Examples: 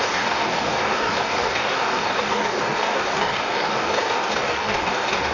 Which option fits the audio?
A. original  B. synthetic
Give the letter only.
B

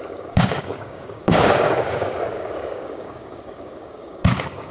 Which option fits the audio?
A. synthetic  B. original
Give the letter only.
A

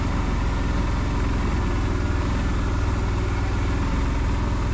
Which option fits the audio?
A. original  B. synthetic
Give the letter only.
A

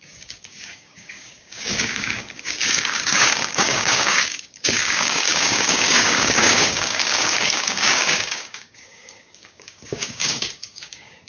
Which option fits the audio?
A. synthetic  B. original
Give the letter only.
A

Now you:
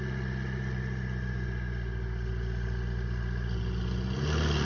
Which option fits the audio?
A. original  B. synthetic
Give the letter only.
A